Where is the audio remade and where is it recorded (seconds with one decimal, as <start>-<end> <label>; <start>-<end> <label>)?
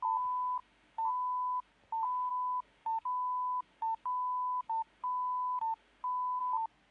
0.0-0.6 recorded; 0.6-1.7 remade; 1.7-2.3 recorded; 2.3-6.4 remade; 6.4-6.9 recorded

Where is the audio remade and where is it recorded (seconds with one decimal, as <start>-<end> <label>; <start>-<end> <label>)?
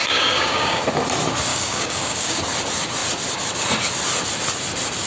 0.0-0.8 remade; 0.8-1.5 recorded; 1.5-2.4 remade; 2.4-5.1 recorded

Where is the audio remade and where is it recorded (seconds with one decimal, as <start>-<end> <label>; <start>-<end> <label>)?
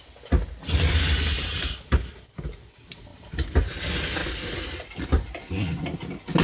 0.0-3.1 recorded; 3.1-3.7 remade; 3.7-4.2 recorded; 4.2-5.1 remade; 5.1-6.4 recorded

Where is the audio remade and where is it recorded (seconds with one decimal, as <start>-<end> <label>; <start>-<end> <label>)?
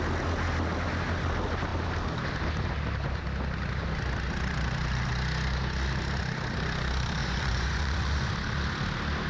0.0-7.2 recorded; 7.2-8.3 remade; 8.3-9.3 recorded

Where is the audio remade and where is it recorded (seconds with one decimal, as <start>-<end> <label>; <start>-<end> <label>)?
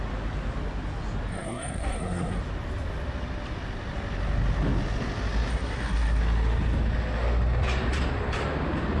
0.0-1.3 recorded; 1.3-2.4 remade; 2.4-5.5 recorded; 5.5-6.2 remade; 6.2-9.0 recorded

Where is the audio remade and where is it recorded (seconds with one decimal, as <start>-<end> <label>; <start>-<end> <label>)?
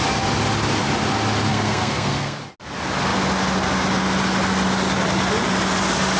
0.0-1.5 recorded; 1.5-2.4 remade; 2.4-6.2 recorded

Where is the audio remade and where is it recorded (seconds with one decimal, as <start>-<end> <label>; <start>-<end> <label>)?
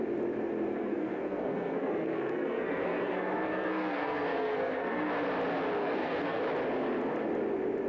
0.0-0.7 recorded; 0.7-5.1 remade; 5.1-5.8 recorded; 5.8-6.4 remade; 6.4-7.9 recorded